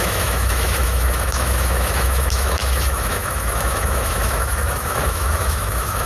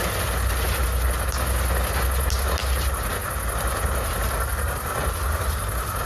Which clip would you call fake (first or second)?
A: first